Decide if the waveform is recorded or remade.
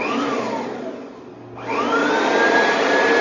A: recorded